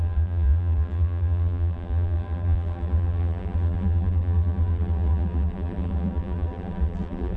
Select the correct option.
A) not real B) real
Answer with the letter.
A